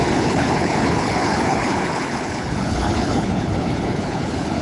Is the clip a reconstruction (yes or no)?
yes